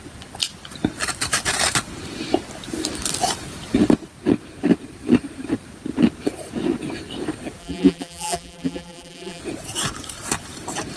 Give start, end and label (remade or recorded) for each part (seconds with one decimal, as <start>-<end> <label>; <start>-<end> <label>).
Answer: 0.0-7.6 recorded; 7.6-9.4 remade; 9.4-11.0 recorded